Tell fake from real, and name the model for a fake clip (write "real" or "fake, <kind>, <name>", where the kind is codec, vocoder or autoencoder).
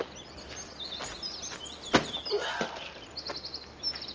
real